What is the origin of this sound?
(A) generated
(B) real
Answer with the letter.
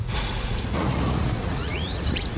A